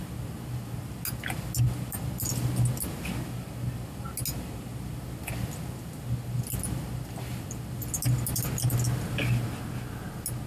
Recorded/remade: recorded